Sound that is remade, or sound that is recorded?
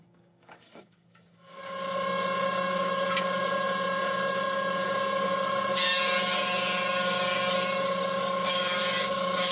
remade